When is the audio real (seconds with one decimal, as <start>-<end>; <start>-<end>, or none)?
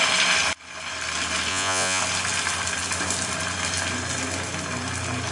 0.0-1.5; 2.0-5.3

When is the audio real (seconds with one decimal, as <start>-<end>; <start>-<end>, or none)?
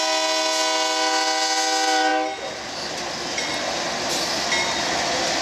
0.0-5.4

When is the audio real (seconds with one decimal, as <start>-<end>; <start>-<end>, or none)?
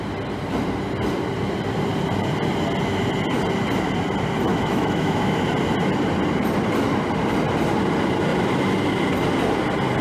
0.0-4.5; 5.4-10.0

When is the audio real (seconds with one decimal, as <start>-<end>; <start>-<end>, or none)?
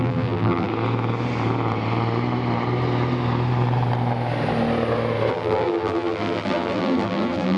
0.7-5.3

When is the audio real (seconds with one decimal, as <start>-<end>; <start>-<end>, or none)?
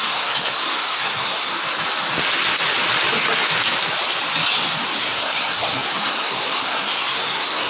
1.5-5.0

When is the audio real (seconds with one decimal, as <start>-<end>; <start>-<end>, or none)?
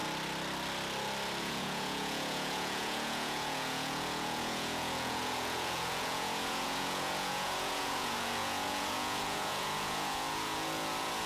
0.0-1.4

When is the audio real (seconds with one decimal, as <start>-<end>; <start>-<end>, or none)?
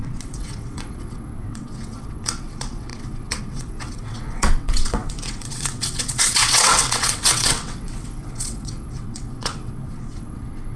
none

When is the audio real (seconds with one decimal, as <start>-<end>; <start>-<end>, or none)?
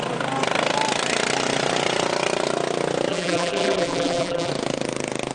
0.0-3.1; 4.5-5.3